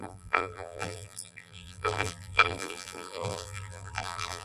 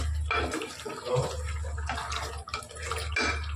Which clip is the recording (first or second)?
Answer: second